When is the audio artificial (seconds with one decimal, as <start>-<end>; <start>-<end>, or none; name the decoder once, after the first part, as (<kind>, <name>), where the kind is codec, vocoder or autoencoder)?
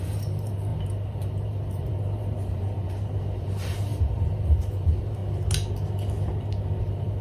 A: 0.0-5.2 (vocoder, BigVGAN v2); 6.8-7.2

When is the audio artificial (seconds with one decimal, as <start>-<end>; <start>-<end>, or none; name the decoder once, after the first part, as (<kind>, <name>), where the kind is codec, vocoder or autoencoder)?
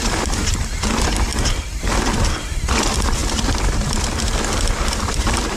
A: none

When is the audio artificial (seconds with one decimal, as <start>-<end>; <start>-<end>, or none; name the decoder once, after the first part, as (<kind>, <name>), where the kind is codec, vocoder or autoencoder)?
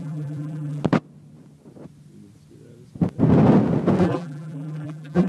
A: 0.0-0.8 (vocoder, BigVGAN v2); 4.0-5.3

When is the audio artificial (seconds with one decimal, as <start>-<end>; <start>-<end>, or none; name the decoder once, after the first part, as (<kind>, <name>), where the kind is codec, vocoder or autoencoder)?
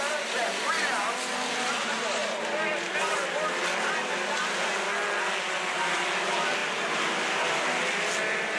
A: 2.2-2.9 (vocoder, BigVGAN v2)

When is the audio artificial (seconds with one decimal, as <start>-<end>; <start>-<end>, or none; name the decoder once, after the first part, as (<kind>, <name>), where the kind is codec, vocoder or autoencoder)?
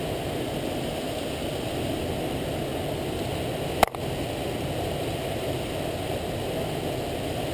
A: none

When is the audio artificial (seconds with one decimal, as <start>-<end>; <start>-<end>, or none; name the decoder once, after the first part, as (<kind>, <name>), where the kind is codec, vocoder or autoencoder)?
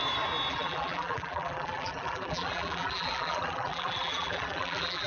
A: 0.5-5.1 (vocoder, BigVGAN v2)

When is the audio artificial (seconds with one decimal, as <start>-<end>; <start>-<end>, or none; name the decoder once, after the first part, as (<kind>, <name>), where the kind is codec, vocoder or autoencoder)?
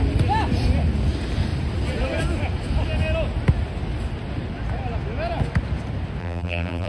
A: 6.2-6.9 (vocoder, BigVGAN v2)